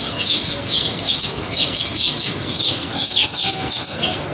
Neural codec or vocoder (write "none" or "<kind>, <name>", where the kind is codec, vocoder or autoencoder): codec, SNAC